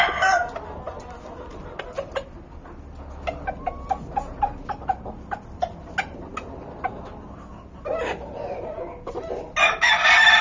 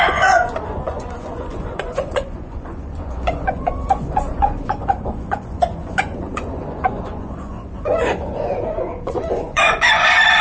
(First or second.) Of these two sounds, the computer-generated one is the second